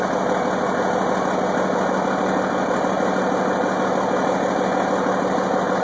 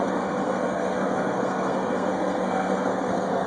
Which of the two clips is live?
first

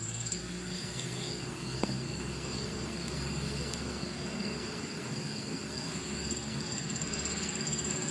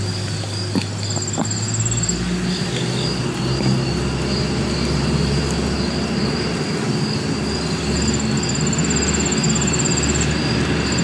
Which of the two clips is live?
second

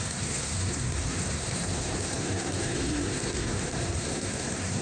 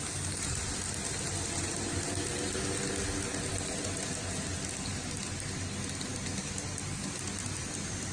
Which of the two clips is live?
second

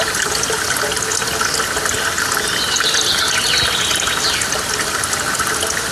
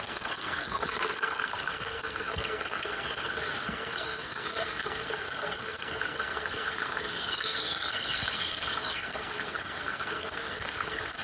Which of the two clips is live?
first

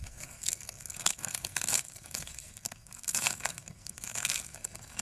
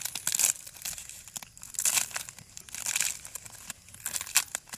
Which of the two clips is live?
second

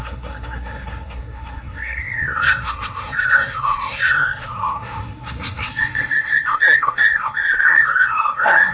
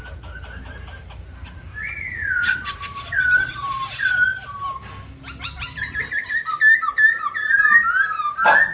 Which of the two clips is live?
second